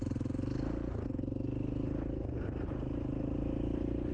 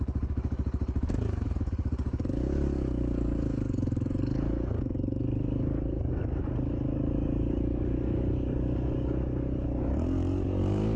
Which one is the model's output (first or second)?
second